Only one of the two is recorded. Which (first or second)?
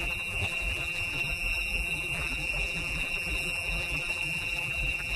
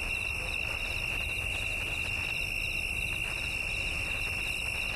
second